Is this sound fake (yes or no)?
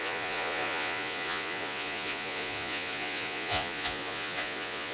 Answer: yes